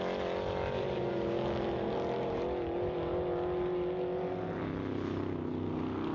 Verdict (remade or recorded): recorded